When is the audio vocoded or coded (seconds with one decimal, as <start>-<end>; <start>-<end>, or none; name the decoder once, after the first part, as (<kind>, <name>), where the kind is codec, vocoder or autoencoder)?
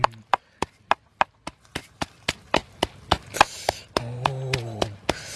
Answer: none